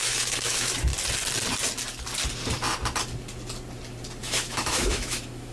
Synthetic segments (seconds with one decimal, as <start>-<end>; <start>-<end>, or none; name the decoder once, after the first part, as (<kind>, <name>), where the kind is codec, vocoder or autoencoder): 0.0-0.9 (autoencoder, DAC-VAE); 4.2-5.5